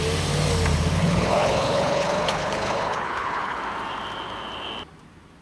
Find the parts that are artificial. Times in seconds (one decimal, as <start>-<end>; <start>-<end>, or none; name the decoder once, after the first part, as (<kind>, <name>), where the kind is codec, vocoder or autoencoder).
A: 1.0-3.6 (codec, HILCodec)